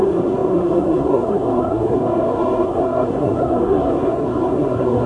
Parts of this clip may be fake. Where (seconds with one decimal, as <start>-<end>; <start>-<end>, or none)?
0.0-5.1